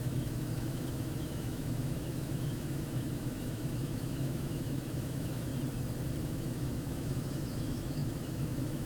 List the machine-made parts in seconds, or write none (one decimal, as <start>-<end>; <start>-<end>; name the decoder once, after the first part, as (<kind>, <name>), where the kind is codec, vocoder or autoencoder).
0.0-5.5 (autoencoder, DAC-VAE); 6.2-8.9